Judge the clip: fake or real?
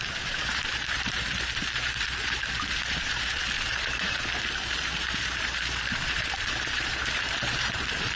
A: fake